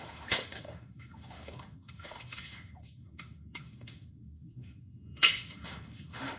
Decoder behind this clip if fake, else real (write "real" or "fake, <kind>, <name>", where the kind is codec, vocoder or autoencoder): fake, autoencoder, DAC-VAE